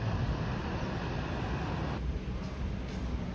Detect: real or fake real